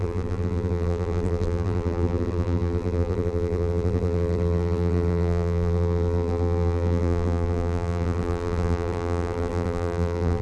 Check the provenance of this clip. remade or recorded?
remade